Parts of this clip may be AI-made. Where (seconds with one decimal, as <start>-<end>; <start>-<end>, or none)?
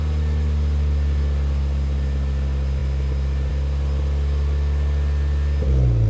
none